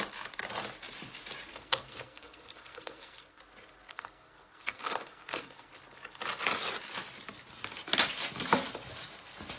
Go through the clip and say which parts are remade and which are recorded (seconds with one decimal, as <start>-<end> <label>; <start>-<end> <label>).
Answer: 0.0-1.5 recorded; 1.5-3.4 remade; 3.4-3.9 recorded; 3.9-5.7 remade; 5.7-9.6 recorded